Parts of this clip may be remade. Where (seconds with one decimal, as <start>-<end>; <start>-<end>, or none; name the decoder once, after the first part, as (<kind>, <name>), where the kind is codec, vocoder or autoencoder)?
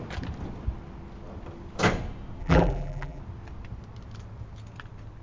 2.4-3.2 (vocoder, BigVGAN v2)